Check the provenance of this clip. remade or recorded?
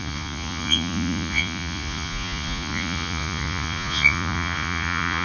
remade